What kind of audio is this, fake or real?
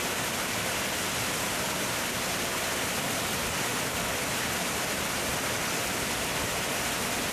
real